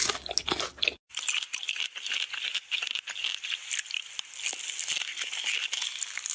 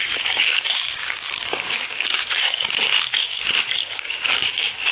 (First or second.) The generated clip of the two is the second